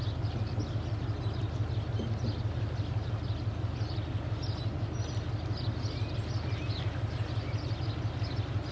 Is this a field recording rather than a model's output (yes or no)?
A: yes